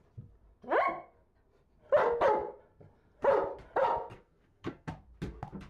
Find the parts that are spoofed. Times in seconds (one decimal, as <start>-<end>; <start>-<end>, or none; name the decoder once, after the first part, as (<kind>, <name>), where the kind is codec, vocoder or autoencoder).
4.1-4.9 (codec, SNAC)